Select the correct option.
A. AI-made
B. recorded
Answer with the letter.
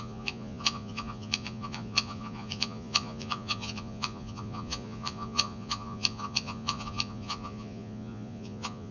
A